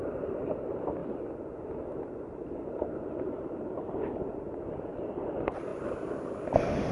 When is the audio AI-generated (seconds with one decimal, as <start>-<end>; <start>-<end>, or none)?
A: none